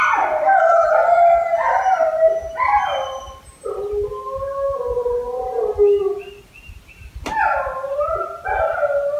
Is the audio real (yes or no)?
yes